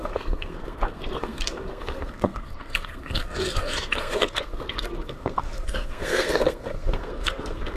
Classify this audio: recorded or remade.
remade